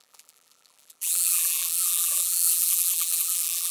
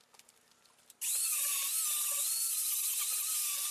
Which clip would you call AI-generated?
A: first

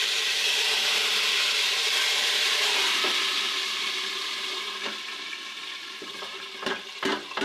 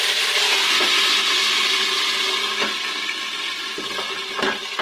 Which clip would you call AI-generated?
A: first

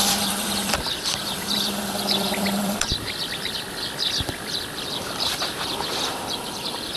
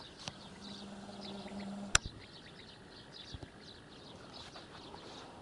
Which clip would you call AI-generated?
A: first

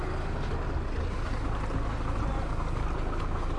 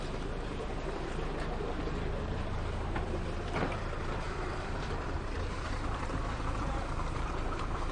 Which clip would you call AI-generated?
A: second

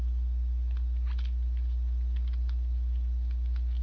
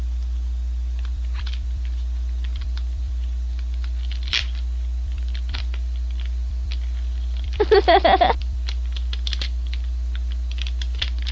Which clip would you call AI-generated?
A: second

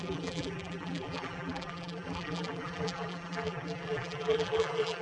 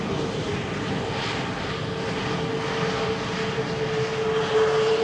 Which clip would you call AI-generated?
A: first